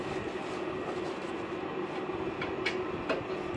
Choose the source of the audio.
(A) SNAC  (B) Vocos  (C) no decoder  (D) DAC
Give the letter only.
C